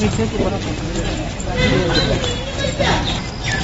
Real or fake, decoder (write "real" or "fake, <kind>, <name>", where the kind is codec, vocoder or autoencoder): real